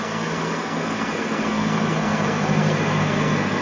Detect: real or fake fake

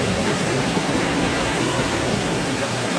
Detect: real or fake fake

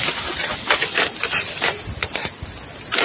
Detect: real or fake real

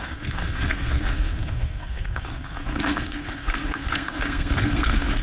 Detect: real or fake fake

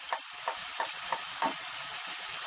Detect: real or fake real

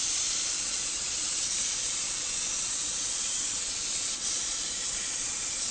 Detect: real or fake fake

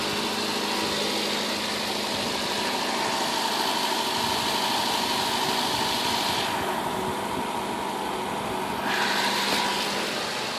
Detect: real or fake real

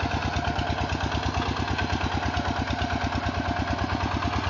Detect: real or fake real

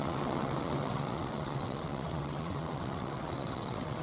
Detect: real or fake fake